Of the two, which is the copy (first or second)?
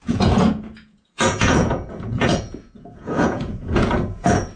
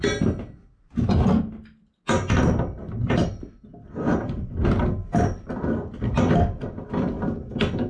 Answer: first